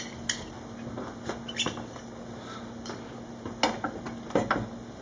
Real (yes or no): yes